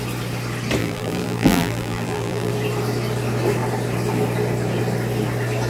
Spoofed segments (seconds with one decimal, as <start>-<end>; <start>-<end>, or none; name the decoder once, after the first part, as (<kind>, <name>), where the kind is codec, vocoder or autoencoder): 0.8-2.5 (vocoder, BigVGAN v2)